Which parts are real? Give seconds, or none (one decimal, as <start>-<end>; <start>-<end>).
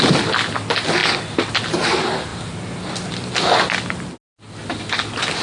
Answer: 0.0-5.4